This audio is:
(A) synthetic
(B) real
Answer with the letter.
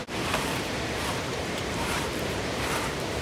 A